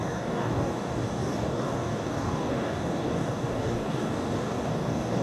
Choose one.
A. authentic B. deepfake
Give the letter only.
B